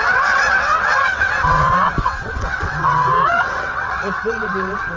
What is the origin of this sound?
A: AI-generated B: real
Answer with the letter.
A